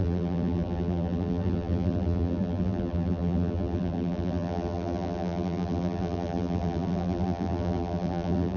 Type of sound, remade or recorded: remade